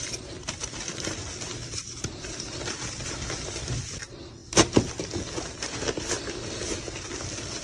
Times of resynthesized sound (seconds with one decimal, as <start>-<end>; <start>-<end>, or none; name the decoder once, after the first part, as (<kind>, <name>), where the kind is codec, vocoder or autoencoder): 0.4-3.0 (vocoder, BigVGAN v2)